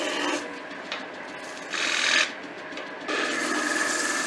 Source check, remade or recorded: recorded